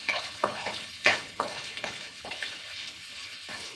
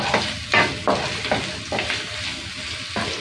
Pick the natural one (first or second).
second